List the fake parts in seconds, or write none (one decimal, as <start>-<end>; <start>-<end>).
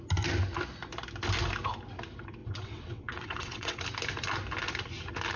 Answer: 2.4-3.8